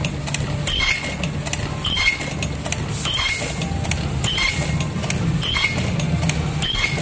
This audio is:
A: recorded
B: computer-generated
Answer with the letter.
A